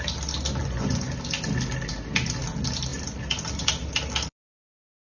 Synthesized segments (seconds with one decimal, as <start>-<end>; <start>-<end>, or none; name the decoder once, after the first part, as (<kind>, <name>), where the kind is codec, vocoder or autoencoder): 0.6-1.1 (vocoder, Vocos)

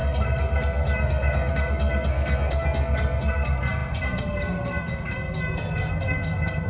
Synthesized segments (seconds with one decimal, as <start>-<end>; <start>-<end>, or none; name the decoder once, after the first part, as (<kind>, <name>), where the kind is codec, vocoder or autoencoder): 0.0-6.7 (codec, SNAC)

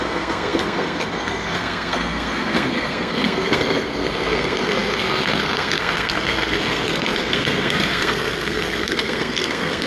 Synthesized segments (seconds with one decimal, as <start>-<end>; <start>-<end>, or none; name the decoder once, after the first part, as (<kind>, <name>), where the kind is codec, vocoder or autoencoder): 0.0-9.9 (codec, SNAC)

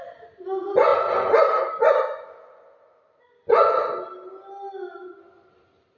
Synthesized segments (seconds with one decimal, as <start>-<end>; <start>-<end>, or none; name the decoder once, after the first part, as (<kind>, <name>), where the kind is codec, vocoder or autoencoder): none